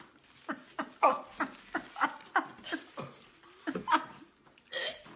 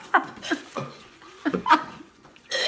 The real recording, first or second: first